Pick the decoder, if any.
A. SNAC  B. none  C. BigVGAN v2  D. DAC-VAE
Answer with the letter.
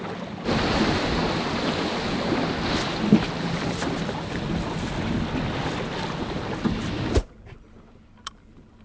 B